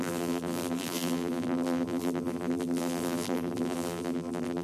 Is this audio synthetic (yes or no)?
yes